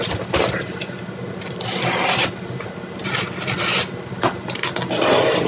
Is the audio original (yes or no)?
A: yes